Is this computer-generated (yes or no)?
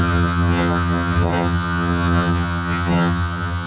yes